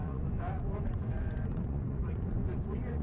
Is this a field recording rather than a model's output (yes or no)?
no